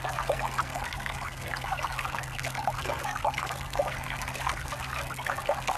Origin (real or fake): fake